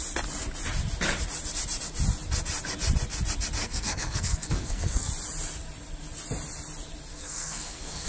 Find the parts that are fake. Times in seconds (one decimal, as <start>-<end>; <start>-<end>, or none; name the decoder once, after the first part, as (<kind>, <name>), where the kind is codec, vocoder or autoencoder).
3.6-5.1 (codec, SNAC); 7.1-8.1